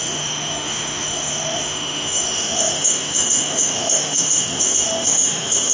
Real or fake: fake